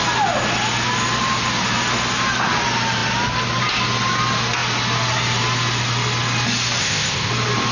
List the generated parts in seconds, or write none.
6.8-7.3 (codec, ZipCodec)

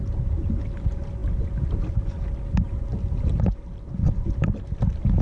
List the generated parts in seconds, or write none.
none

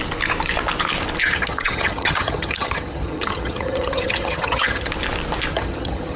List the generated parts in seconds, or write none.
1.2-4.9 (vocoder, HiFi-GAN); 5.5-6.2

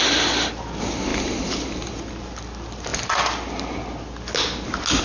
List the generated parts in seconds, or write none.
none

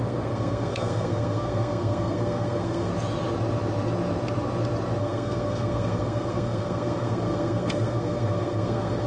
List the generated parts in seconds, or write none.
0.0-2.9 (codec, SNAC); 5.0-9.1

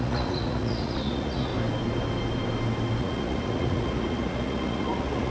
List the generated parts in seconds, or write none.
0.0-1.5 (vocoder, Vocos); 3.0-5.3

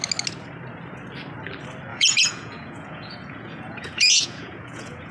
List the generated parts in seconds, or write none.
1.9-5.1 (vocoder, Vocos)